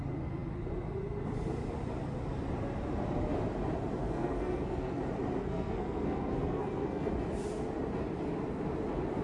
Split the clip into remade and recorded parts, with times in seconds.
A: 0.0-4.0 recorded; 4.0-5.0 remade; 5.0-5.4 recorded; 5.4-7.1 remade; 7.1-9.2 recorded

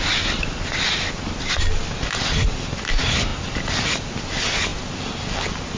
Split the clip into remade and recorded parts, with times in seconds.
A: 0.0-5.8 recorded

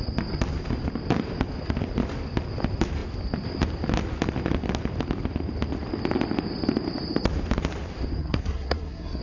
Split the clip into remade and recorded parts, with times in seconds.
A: 0.0-8.2 recorded; 8.2-9.2 remade

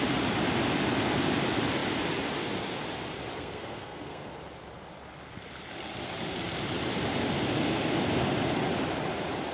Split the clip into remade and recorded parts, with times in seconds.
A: 0.0-3.4 recorded; 3.4-4.3 remade; 4.3-9.5 recorded

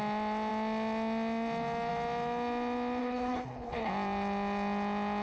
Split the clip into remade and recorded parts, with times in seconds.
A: 0.0-3.0 recorded; 3.0-3.9 remade; 3.9-5.2 recorded

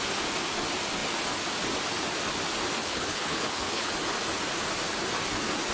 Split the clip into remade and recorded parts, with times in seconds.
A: 0.0-2.8 recorded; 2.8-3.9 remade; 3.9-5.7 recorded

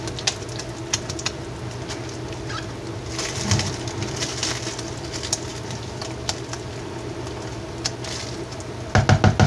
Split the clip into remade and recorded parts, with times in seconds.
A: 0.0-9.5 recorded